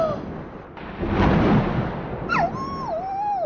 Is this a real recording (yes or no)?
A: yes